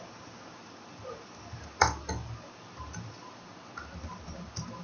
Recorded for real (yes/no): yes